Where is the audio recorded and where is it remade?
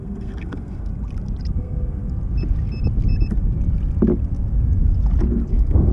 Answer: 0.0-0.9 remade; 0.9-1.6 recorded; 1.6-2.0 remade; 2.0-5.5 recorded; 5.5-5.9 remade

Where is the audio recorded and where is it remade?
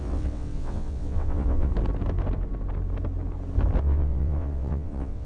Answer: 0.0-1.7 remade; 1.7-3.8 recorded; 3.8-5.3 remade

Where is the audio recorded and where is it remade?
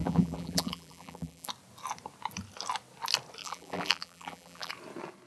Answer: 0.0-1.5 remade; 1.5-3.4 recorded; 3.4-4.7 remade; 4.7-5.3 recorded